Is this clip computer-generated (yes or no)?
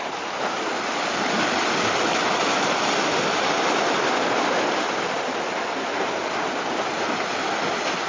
no